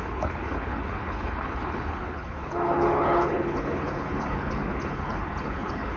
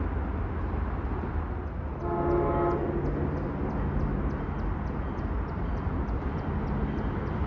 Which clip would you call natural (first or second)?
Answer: second